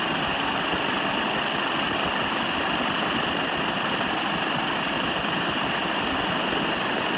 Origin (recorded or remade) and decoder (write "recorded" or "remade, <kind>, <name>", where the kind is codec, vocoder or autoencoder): recorded